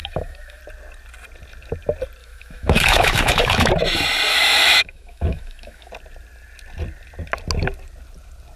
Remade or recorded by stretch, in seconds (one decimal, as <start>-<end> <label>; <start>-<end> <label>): 0.0-0.6 remade; 0.6-2.2 recorded; 2.2-3.7 remade; 3.7-4.3 recorded; 4.3-5.9 remade; 5.9-8.6 recorded